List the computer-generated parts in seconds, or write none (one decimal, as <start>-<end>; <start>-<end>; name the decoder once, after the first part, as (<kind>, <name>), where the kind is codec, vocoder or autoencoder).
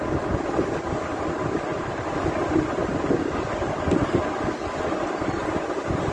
none